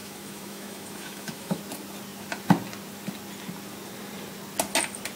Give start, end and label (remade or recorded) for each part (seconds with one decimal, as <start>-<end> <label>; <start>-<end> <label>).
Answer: 0.0-1.6 remade; 1.6-5.2 recorded